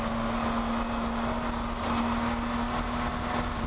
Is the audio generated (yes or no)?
no